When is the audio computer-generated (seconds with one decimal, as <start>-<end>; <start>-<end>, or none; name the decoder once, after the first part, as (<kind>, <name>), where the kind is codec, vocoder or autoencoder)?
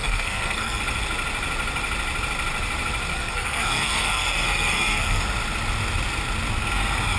0.0-0.8 (codec, SNAC); 3.1-5.2